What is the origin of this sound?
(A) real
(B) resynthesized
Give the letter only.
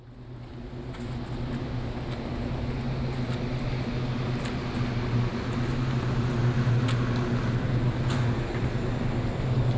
A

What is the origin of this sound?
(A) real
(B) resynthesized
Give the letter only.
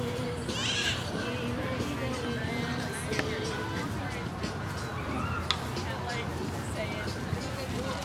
A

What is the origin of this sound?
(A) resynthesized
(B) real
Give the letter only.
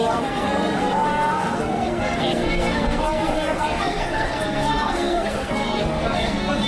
A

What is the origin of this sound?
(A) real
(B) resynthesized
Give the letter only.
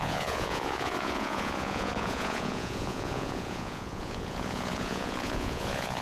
B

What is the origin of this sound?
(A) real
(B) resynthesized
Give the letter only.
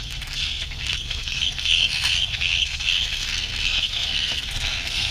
B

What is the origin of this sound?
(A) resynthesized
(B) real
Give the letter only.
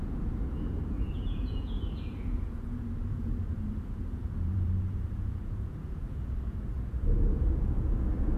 A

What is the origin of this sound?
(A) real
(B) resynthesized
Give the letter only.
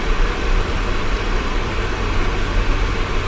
B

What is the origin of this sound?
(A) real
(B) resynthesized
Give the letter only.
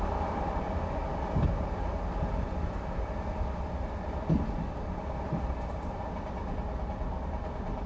A